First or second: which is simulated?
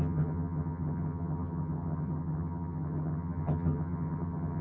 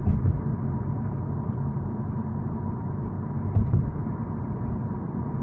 first